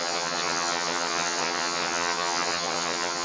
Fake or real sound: fake